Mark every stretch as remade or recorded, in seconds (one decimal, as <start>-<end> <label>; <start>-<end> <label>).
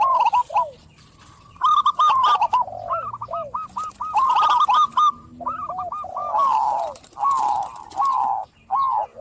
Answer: 0.0-9.2 recorded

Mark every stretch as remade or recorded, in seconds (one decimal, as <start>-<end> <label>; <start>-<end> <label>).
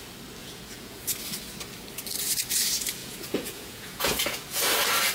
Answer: 0.0-0.4 recorded; 0.4-1.0 remade; 1.0-3.0 recorded; 3.0-4.6 remade; 4.6-5.1 recorded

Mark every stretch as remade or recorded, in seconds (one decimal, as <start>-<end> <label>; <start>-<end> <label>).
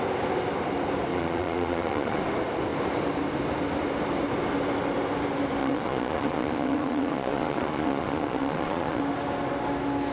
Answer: 0.0-1.1 recorded; 1.1-2.2 remade; 2.2-5.6 recorded; 5.6-9.0 remade; 9.0-10.1 recorded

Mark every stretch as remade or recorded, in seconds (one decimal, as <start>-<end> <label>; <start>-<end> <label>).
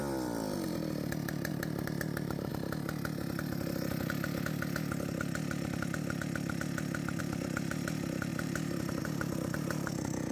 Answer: 0.0-1.5 recorded; 1.5-2.5 remade; 2.5-7.2 recorded; 7.2-10.3 remade